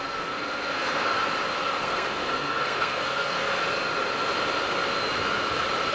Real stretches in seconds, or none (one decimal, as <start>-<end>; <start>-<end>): 1.2-1.8; 3.6-5.9